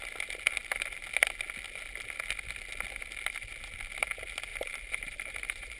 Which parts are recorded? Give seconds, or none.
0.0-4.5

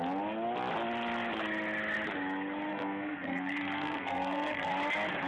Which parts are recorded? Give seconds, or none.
0.0-2.7; 4.7-5.3

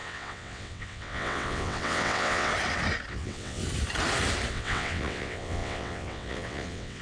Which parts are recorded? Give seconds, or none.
2.5-3.1; 3.6-4.5

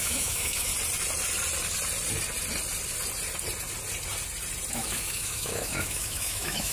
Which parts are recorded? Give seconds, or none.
0.7-4.7

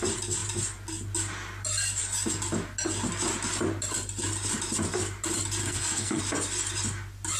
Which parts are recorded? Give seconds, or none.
0.0-5.6; 6.2-7.4